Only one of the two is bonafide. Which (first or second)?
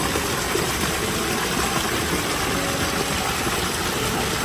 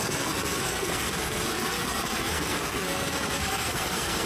first